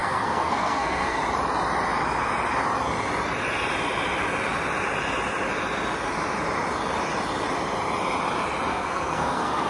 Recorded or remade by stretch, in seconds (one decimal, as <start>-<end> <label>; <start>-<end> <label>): 0.0-1.2 remade; 1.2-8.7 recorded; 8.7-9.7 remade